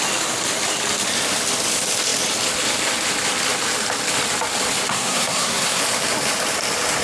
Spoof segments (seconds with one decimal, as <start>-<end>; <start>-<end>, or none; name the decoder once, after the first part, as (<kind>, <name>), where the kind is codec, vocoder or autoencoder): 4.9-5.8 (codec, SNAC)